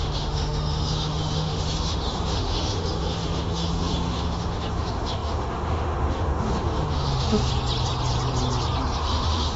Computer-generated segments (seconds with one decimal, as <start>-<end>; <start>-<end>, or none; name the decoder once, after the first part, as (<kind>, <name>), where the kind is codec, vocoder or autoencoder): 0.0-7.5 (autoencoder, DAC-VAE); 9.0-9.6